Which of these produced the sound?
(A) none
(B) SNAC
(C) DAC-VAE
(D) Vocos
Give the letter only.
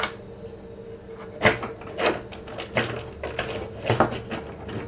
A